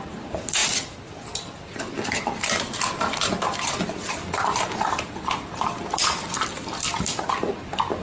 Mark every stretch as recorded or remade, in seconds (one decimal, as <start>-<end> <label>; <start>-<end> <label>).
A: 0.0-8.0 remade